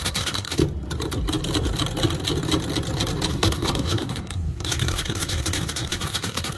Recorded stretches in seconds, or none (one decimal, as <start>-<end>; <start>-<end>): 0.6-3.3